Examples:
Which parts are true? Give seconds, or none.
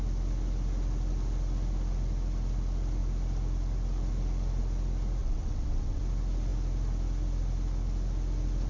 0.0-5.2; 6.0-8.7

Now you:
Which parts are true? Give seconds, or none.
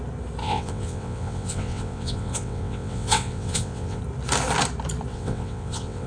0.0-0.4; 4.0-5.1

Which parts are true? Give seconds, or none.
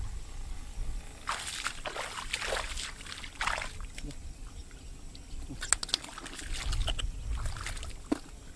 0.0-8.6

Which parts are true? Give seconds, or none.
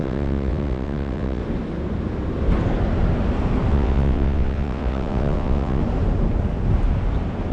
1.4-3.7; 5.8-7.5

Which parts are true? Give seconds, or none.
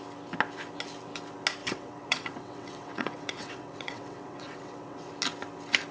0.0-1.6; 5.1-5.9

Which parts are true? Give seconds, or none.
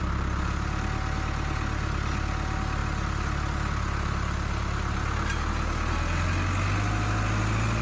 0.0-7.8